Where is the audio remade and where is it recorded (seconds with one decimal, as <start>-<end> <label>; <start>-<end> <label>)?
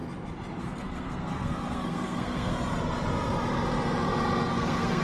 0.0-0.6 recorded; 0.6-2.5 remade; 2.5-4.5 recorded; 4.5-5.0 remade